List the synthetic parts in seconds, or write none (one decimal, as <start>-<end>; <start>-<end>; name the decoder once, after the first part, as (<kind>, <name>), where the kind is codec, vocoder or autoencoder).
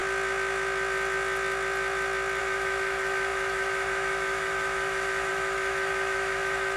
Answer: 2.4-6.8 (autoencoder, DAC-VAE)